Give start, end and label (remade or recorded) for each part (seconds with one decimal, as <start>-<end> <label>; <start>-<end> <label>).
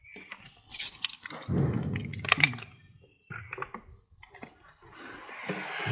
0.0-5.9 recorded